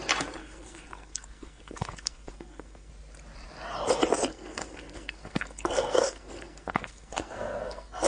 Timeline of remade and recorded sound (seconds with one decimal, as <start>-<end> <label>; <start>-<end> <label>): 0.0-0.4 recorded; 0.4-2.9 remade; 2.9-4.3 recorded; 4.3-8.1 remade